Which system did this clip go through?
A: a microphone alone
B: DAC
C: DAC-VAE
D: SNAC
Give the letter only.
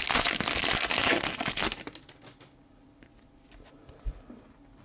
A